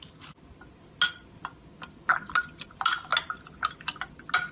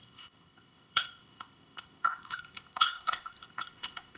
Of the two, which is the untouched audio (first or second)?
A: first